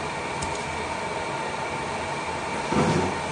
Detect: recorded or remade recorded